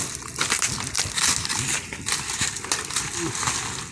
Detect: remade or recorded recorded